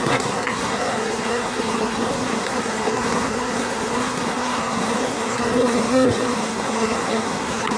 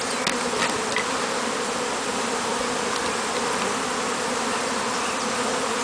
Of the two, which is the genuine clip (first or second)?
second